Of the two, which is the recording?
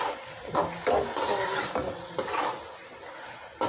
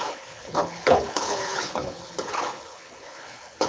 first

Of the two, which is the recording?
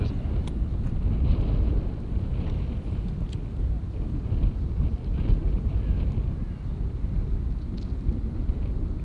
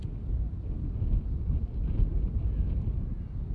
second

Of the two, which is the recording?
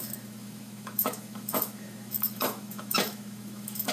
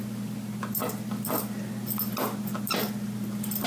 second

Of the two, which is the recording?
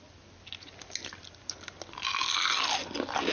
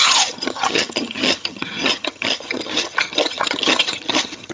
first